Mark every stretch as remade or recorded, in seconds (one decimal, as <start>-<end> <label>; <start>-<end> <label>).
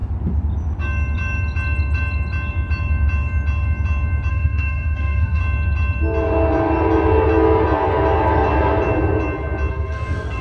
0.0-4.3 recorded; 4.3-5.4 remade; 5.4-9.7 recorded; 9.7-10.4 remade